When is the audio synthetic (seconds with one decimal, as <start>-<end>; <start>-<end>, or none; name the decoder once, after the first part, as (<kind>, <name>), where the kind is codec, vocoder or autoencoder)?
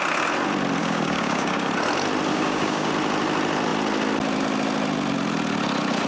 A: 0.8-1.7 (codec, DAC); 2.3-2.9